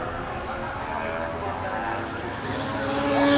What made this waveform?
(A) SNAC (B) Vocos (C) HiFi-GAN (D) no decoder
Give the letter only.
D